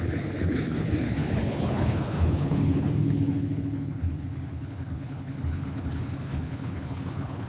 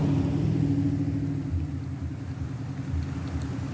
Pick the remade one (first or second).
first